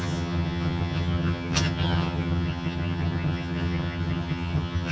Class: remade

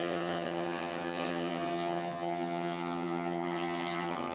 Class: remade